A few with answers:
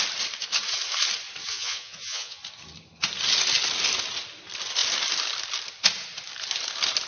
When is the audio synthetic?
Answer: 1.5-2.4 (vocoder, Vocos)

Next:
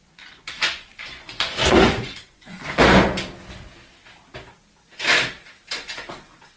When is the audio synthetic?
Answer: 0.0-2.8 (vocoder, Vocos); 5.7-6.6

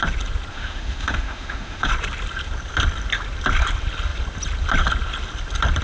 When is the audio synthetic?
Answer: 0.5-1.9 (autoencoder, DAC-VAE)

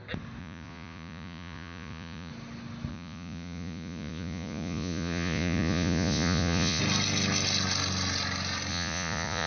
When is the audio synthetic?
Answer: 0.4-2.3 (vocoder, Vocos); 2.9-6.8; 8.7-9.5

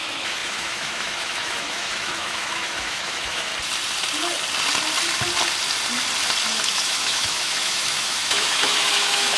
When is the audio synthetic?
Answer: 0.0-3.5 (autoencoder, DAC-VAE); 6.7-9.4

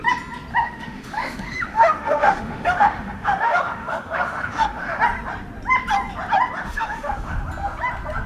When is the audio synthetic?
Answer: 0.5-5.0 (autoencoder, DAC-VAE); 6.6-7.4

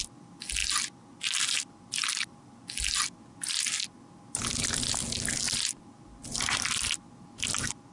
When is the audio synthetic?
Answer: none

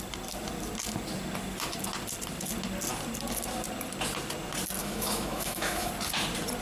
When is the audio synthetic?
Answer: 4.8-5.9 (autoencoder, DAC-VAE)